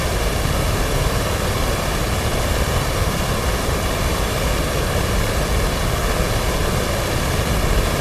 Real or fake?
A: real